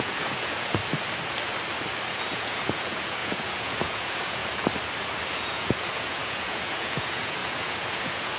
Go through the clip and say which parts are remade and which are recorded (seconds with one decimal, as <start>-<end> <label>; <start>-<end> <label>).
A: 0.0-0.8 remade; 0.8-2.1 recorded; 2.1-4.4 remade; 4.4-5.4 recorded; 5.4-8.4 remade